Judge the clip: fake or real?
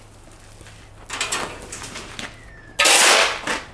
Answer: real